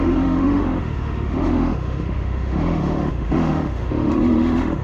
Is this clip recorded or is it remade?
remade